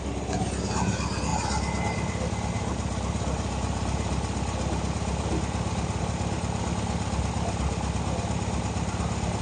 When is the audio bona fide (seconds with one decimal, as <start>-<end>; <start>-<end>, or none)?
0.0-9.4